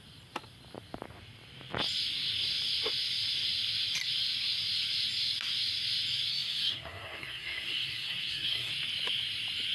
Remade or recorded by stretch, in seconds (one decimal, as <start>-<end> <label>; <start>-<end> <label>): 0.0-6.3 recorded; 6.3-8.7 remade; 8.7-9.7 recorded